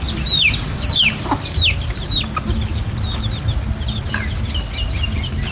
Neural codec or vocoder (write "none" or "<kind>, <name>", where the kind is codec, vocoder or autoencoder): none